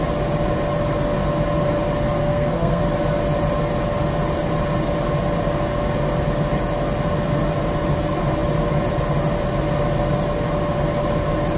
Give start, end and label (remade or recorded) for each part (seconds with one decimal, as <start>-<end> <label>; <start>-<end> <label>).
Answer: 0.0-2.2 recorded; 2.2-2.8 remade; 2.8-11.6 recorded

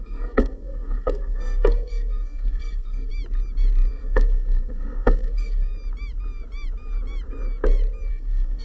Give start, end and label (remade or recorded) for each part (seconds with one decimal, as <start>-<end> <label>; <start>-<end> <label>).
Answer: 0.0-3.1 remade; 3.1-3.9 recorded; 3.9-5.7 remade; 5.7-8.1 recorded; 8.1-8.6 remade

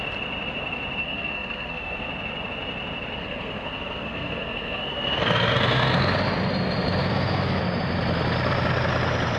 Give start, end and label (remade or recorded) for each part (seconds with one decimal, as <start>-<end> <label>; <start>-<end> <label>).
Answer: 0.0-1.0 recorded; 1.0-2.1 remade; 2.1-3.2 recorded; 3.2-6.0 remade; 6.0-7.0 recorded; 7.0-7.6 remade; 7.6-9.4 recorded

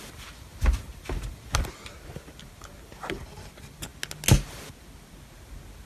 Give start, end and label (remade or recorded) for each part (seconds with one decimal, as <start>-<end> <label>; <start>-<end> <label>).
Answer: 0.0-5.9 recorded

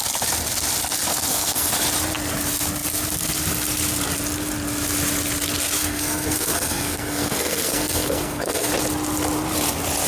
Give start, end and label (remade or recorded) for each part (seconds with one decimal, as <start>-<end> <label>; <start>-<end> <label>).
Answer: 0.0-1.1 recorded; 1.1-1.7 remade; 1.7-5.8 recorded; 5.8-8.7 remade; 8.7-10.1 recorded

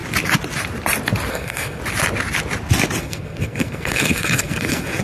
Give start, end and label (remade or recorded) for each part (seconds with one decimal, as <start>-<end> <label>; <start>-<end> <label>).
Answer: 0.0-1.3 recorded; 1.3-1.8 remade; 1.8-3.0 recorded; 3.0-5.0 remade